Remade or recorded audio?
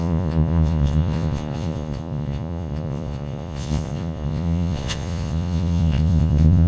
remade